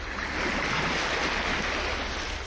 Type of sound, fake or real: real